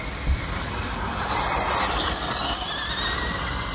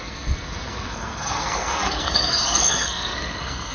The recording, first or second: first